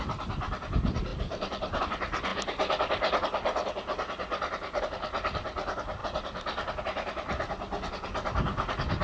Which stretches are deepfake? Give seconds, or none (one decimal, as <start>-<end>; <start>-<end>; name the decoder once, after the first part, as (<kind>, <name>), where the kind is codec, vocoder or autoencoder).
1.1-1.8 (vocoder, BigVGAN v2)